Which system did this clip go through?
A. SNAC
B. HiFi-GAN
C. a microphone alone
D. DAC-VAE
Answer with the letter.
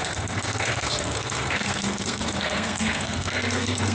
A